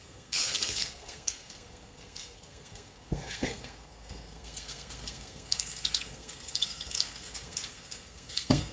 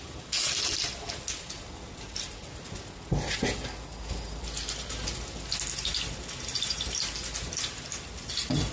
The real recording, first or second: second